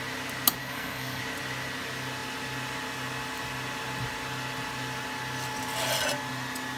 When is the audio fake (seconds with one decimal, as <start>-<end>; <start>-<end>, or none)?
0.6-1.2